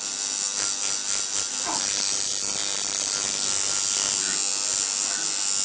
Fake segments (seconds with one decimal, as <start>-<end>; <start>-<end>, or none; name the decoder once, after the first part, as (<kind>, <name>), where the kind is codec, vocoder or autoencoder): none